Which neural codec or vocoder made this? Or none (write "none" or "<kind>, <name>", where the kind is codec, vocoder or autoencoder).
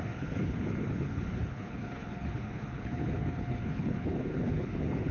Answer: codec, HILCodec